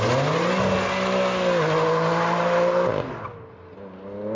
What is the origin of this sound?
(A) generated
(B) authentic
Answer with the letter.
B